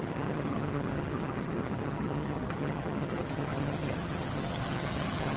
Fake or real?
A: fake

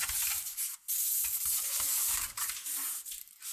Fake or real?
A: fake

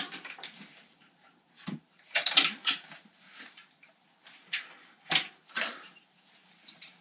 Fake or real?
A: fake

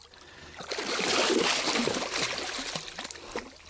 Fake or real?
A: real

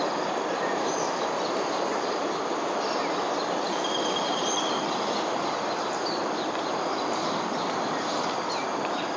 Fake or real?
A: real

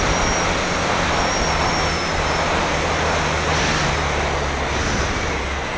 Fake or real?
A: real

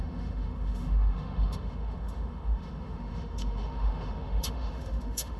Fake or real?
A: fake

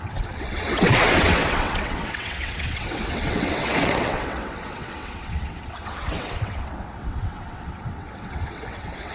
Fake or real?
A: fake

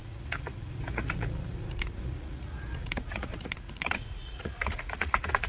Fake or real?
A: fake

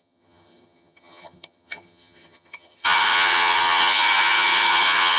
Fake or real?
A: fake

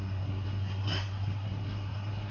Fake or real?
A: fake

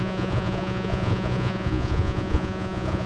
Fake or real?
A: fake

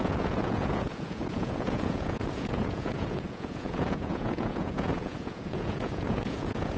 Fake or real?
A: fake